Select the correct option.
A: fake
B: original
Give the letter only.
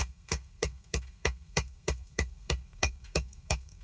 A